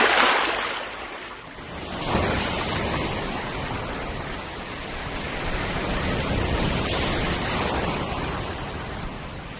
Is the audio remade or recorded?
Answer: recorded